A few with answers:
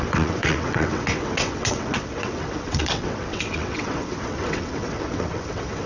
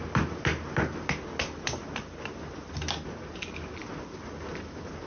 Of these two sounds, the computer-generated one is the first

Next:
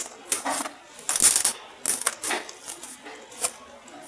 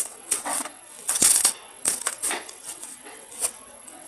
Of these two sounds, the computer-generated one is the second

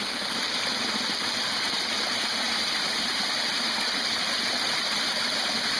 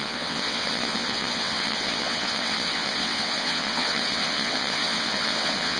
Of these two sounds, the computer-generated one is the second